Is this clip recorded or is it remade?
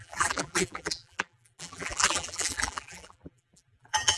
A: remade